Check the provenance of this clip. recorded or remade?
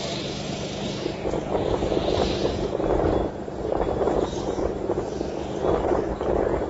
recorded